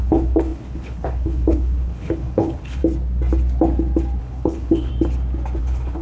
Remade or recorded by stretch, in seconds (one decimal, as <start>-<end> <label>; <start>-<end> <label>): 0.0-2.8 remade; 2.8-4.2 recorded; 4.2-4.9 remade; 4.9-5.6 recorded; 5.6-6.0 remade